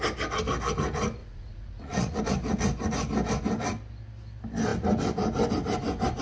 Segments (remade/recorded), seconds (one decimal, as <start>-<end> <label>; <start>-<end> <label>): 0.0-1.2 recorded; 1.2-2.2 remade; 2.2-6.2 recorded